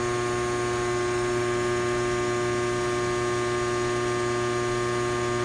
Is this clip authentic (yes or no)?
yes